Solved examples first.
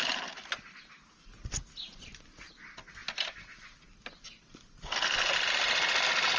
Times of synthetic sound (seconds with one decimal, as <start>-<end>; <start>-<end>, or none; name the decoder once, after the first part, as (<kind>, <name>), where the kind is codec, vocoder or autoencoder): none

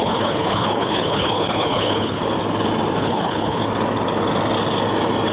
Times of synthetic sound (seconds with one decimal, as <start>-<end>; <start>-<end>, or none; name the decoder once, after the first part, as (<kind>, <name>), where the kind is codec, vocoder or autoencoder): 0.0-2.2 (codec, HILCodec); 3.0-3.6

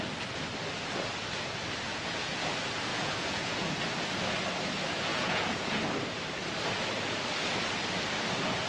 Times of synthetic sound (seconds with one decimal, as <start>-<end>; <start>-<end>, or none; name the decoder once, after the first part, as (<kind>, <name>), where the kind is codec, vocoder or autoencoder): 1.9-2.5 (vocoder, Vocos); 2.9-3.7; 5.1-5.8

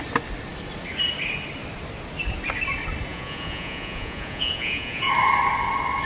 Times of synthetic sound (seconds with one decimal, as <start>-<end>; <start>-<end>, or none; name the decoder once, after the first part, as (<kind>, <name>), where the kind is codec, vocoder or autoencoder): 3.1-5.1 (vocoder, Vocos)

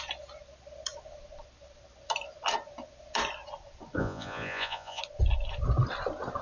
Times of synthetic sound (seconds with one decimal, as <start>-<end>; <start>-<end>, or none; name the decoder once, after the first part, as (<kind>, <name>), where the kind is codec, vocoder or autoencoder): 4.0-5.0 (vocoder, Vocos)